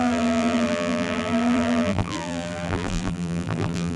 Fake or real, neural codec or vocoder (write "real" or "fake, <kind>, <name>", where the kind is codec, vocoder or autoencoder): fake, vocoder, BigVGAN v2